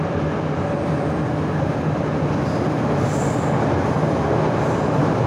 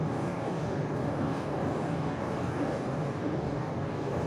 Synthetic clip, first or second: second